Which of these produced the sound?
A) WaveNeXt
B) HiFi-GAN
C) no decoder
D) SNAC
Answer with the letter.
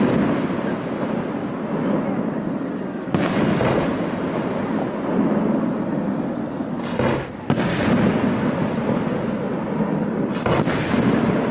C